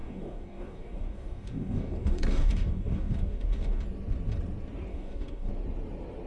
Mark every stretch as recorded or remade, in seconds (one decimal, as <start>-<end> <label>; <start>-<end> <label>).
0.0-3.8 remade; 3.8-4.9 recorded; 4.9-5.5 remade; 5.5-6.3 recorded